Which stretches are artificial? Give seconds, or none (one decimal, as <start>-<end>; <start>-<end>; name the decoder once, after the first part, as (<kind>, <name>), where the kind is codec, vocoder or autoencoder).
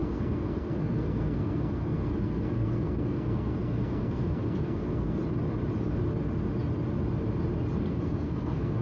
0.0-5.2 (codec, SNAC); 7.9-8.8